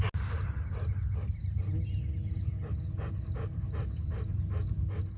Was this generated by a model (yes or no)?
no